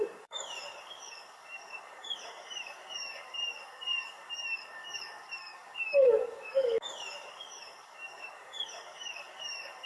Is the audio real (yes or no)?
no